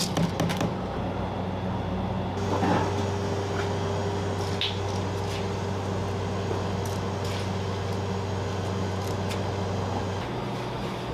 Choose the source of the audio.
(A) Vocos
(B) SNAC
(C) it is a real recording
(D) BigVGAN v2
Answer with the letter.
C